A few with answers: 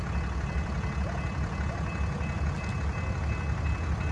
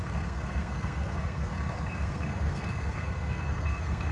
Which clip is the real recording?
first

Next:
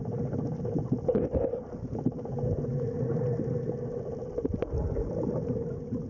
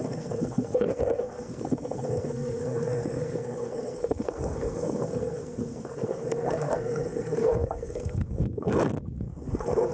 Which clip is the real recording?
first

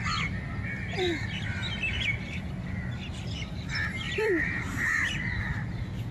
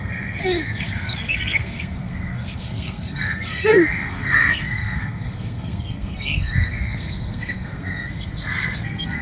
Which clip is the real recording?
first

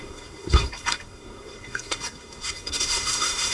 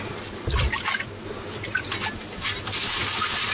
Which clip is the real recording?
second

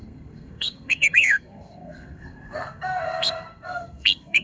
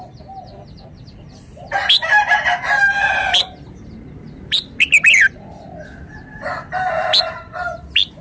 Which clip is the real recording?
second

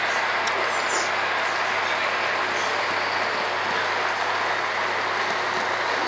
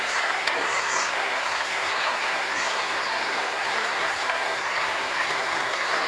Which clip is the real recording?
first